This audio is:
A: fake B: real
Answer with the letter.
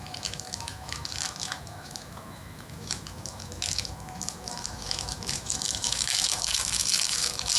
A